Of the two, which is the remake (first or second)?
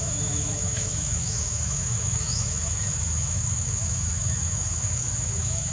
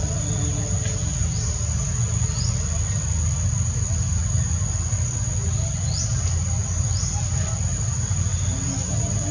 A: first